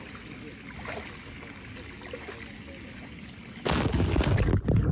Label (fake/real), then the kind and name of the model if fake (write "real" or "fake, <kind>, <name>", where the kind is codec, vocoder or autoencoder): real